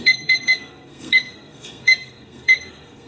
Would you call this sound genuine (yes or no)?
no